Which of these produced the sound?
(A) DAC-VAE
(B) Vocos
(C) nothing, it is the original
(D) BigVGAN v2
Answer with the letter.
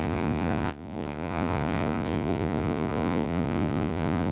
B